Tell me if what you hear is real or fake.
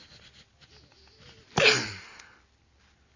real